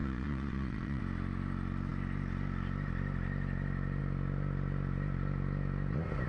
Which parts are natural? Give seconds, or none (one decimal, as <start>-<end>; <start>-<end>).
1.0-6.3